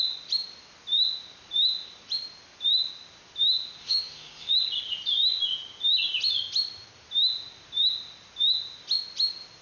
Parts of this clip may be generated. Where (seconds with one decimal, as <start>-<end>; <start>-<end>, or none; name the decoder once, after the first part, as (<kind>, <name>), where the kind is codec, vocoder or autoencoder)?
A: 3.8-4.5 (autoencoder, DAC-VAE)